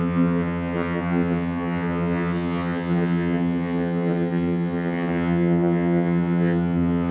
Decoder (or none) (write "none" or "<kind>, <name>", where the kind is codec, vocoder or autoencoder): vocoder, HiFi-GAN